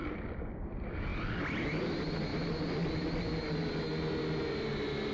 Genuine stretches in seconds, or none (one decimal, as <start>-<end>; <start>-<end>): 0.0-5.1